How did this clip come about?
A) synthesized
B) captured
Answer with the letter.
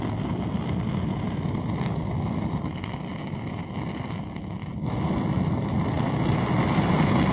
B